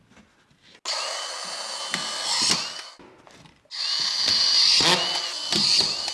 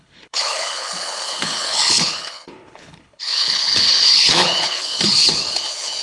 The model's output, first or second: second